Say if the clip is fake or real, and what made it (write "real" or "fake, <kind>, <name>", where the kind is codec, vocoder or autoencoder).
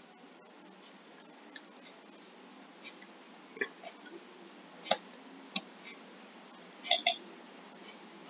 real